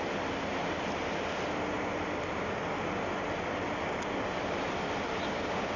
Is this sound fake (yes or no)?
no